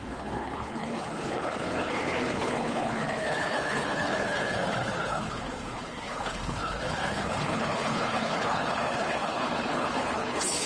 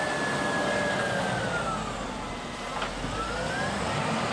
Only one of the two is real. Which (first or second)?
second